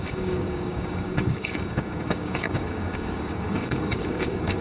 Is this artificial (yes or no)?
yes